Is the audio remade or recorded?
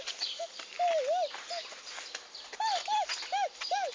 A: recorded